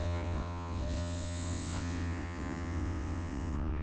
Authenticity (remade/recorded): remade